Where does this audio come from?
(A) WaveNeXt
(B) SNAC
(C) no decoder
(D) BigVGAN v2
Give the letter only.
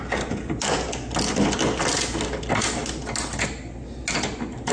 C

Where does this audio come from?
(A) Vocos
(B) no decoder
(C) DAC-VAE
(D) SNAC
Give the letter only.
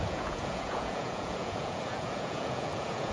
A